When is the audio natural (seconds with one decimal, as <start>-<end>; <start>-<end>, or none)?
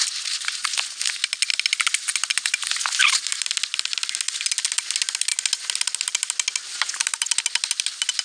0.0-8.2